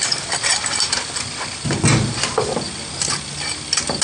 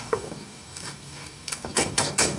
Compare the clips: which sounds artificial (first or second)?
second